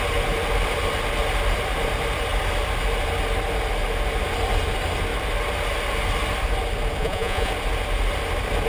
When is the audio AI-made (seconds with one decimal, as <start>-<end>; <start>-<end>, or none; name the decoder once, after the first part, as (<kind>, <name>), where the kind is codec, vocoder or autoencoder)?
7.0-7.5 (vocoder, Vocos)